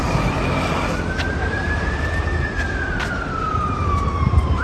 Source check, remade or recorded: remade